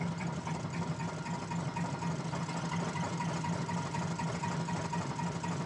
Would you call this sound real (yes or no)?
yes